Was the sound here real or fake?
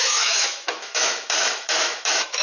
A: fake